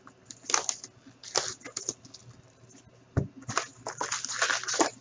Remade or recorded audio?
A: recorded